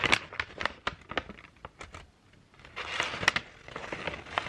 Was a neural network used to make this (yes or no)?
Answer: no